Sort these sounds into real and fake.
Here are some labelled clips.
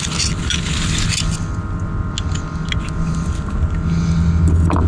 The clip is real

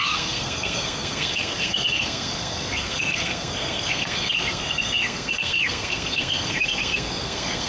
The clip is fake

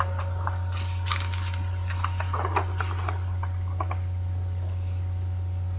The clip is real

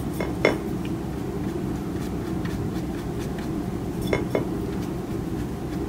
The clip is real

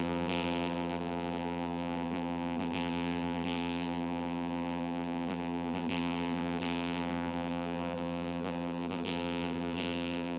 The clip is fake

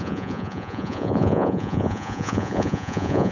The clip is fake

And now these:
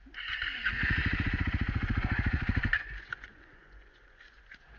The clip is fake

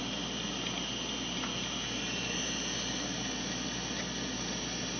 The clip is real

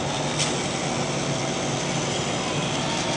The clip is real